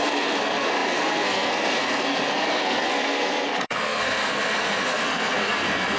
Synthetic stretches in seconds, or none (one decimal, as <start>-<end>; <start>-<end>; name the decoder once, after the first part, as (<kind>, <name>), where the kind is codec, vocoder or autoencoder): 0.0-6.0 (codec, SNAC)